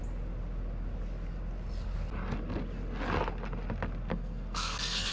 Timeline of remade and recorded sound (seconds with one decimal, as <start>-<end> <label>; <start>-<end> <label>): 0.0-4.1 recorded; 4.1-5.1 remade